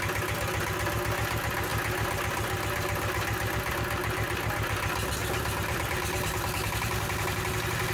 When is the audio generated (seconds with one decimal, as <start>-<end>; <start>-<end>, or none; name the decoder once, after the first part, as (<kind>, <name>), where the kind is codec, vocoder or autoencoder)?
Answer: none